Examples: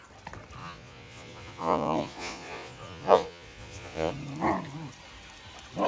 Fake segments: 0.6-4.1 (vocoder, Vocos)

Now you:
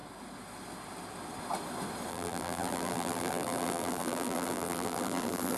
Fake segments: 2.1-5.6 (vocoder, BigVGAN v2)

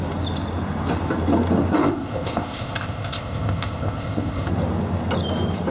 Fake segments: 1.8-4.5 (codec, ZipCodec)

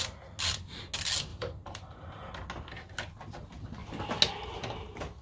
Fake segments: 1.3-2.3 (vocoder, BigVGAN v2)